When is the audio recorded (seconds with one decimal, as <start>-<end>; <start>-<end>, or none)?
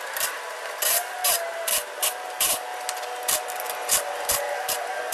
1.2-2.0; 2.7-3.9